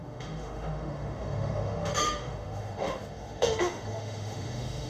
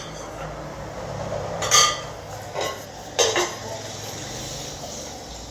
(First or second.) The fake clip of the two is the first